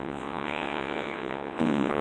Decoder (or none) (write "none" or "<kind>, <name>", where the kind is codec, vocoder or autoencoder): vocoder, WaveNeXt